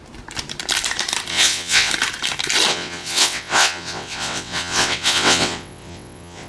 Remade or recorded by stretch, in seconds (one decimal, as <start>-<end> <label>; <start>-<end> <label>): 0.0-1.3 recorded; 1.3-1.9 remade; 1.9-2.7 recorded; 2.7-6.5 remade

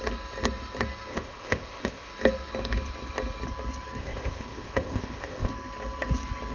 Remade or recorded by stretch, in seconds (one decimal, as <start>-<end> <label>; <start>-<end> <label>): 0.0-1.1 recorded; 1.1-2.1 remade; 2.1-4.0 recorded; 4.0-5.5 remade; 5.5-6.5 recorded

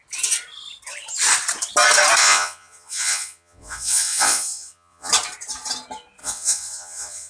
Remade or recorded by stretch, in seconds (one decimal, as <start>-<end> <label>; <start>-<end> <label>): 0.0-2.2 recorded; 2.2-5.1 remade; 5.1-6.2 recorded; 6.2-7.3 remade

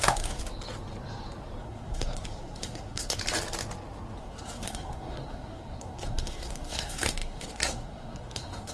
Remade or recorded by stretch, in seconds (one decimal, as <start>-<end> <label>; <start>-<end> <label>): 0.0-0.4 remade; 0.4-1.6 recorded; 1.6-3.2 remade; 3.2-4.2 recorded; 4.2-8.7 remade

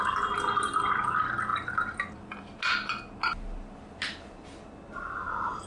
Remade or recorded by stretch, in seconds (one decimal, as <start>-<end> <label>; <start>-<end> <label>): 0.0-5.7 recorded

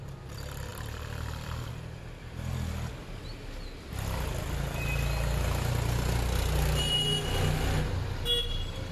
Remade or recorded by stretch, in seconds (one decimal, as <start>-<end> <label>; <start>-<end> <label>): 0.0-0.7 recorded; 0.7-1.7 remade; 1.7-8.9 recorded

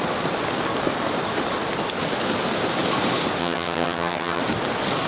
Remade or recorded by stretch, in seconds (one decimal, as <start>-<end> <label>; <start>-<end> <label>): 0.0-3.4 recorded; 3.4-4.4 remade; 4.4-5.1 recorded